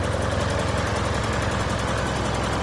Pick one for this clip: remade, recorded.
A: recorded